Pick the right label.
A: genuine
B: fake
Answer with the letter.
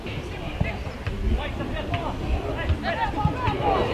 A